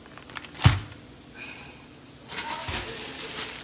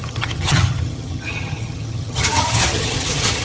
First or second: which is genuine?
first